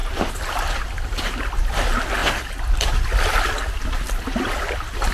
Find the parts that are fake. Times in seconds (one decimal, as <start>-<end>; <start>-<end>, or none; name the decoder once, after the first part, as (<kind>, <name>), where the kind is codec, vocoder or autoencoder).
none